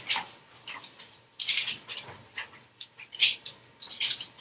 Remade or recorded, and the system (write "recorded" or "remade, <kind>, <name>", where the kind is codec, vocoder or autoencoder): recorded